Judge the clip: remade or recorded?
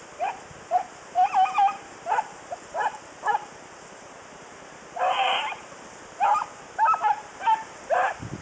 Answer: recorded